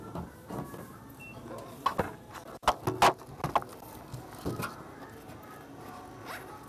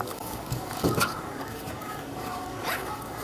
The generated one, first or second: second